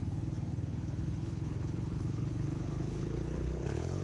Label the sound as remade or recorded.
remade